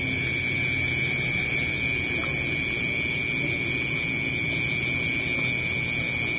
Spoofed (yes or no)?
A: no